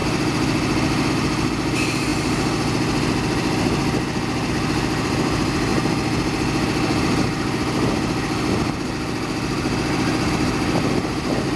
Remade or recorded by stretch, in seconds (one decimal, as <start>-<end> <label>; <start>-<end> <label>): 0.0-11.6 recorded